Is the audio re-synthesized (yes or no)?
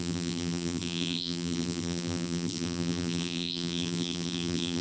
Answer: yes